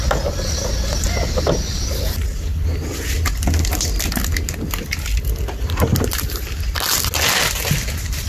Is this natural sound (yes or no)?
yes